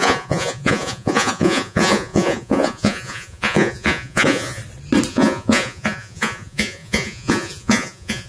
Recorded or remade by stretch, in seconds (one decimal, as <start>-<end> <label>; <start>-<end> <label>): 0.0-4.6 remade; 4.6-5.1 recorded; 5.1-8.3 remade